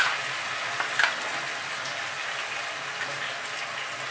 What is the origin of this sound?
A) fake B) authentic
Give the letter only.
B